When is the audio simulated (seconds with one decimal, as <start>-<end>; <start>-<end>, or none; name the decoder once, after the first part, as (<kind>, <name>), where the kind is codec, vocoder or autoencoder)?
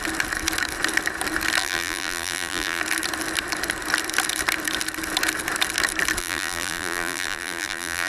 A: 1.6-2.8 (vocoder, BigVGAN v2); 6.2-8.1